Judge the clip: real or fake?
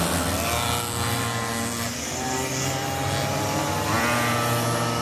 real